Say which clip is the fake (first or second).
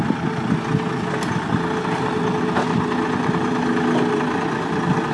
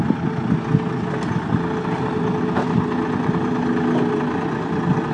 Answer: first